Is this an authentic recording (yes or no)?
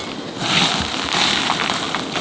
yes